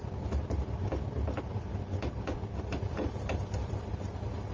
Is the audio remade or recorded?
remade